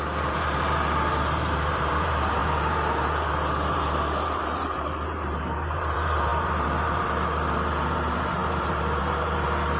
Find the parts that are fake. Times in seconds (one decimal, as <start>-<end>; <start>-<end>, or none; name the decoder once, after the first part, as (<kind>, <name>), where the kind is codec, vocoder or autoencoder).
0.0-9.8 (vocoder, BigVGAN v2)